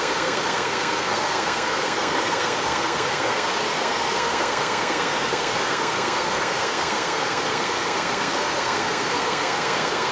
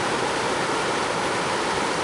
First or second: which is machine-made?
first